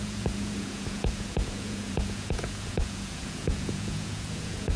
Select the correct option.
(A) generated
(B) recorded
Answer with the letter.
A